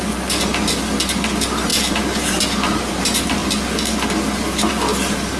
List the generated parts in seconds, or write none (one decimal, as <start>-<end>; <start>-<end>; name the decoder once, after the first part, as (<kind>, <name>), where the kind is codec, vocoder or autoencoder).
none